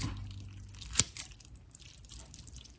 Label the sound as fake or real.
real